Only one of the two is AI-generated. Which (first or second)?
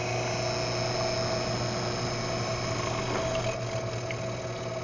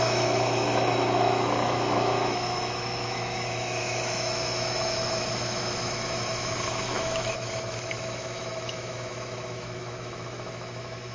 second